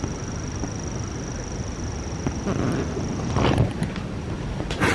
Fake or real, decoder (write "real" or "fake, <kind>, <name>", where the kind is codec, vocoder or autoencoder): real